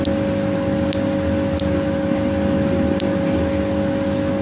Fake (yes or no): no